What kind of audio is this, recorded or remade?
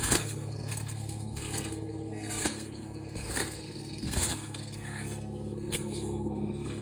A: remade